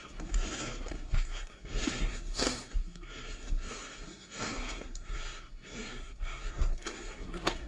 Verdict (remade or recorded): remade